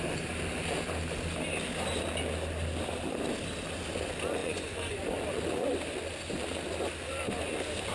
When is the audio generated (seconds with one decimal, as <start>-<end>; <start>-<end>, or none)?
4.4-5.0